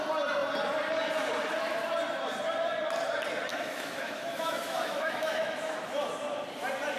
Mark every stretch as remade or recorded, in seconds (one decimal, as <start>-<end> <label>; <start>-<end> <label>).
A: 0.0-3.5 recorded; 3.5-6.1 remade; 6.1-7.0 recorded